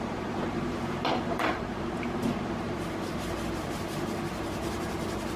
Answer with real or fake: fake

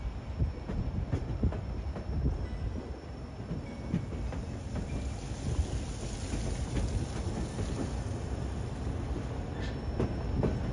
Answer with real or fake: real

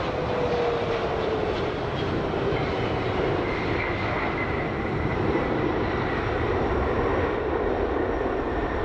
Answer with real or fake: real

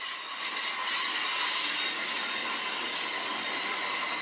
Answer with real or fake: real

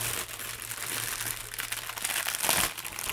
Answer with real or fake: real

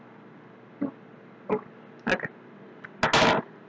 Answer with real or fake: real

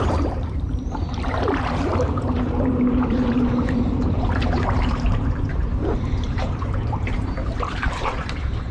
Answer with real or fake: fake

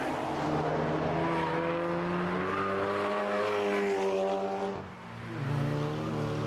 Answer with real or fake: real